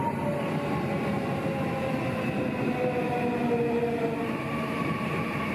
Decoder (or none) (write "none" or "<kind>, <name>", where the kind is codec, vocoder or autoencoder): none